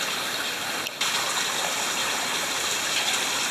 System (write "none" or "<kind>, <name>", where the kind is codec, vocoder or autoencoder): none